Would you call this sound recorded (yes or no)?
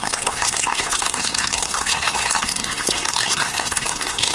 no